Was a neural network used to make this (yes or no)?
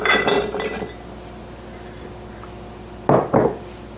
no